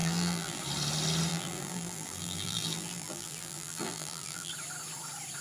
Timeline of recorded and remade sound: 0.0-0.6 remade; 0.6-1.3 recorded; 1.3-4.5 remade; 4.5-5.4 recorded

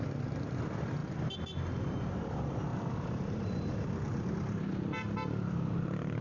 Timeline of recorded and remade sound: 0.0-2.7 recorded; 2.7-4.3 remade; 4.3-6.2 recorded

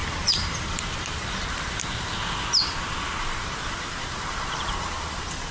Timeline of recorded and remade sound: 0.0-1.7 remade; 1.7-3.4 recorded; 3.4-5.5 remade